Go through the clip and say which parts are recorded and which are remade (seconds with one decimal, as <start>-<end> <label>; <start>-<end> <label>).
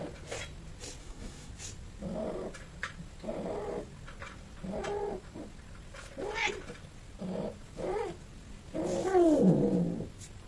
0.0-1.0 recorded; 1.0-1.5 remade; 1.5-10.5 recorded